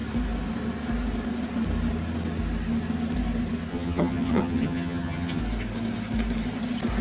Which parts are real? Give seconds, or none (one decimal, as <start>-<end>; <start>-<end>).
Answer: 0.0-3.7; 5.4-7.0